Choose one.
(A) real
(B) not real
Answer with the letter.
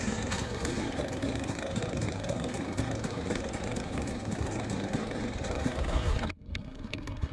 B